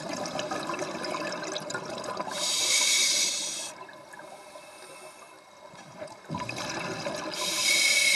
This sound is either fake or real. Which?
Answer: real